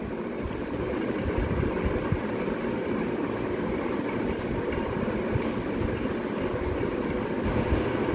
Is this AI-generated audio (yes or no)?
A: yes